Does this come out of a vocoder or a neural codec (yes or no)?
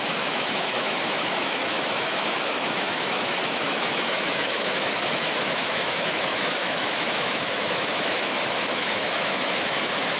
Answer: yes